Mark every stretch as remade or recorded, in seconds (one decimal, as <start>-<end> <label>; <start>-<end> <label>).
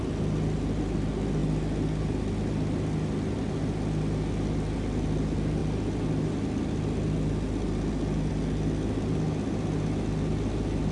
0.0-10.9 recorded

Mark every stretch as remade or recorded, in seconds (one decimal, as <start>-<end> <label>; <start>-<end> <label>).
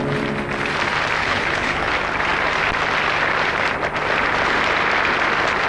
0.0-1.2 recorded; 1.2-1.9 remade; 1.9-5.7 recorded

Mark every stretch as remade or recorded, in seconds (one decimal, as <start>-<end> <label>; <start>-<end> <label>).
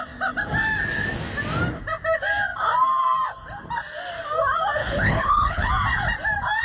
0.0-4.8 recorded; 4.8-5.7 remade; 5.7-6.6 recorded